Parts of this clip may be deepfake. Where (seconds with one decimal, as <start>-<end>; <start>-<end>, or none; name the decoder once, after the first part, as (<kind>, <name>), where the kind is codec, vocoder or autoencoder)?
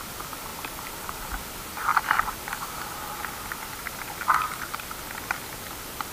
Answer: 0.5-1.4 (vocoder, BigVGAN v2)